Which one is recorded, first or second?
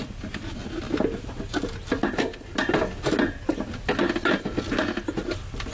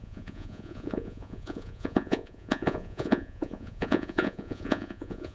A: first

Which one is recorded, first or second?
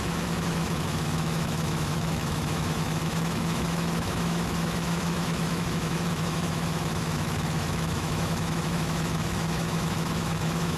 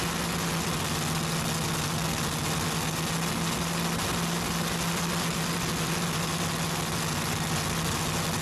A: second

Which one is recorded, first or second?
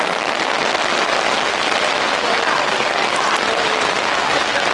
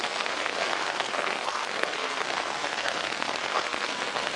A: first